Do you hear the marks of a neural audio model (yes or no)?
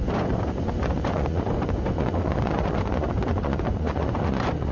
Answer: yes